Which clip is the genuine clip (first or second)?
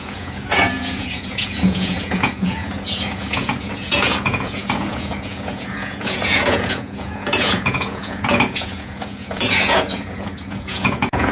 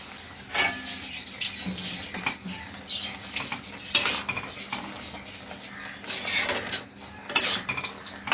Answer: second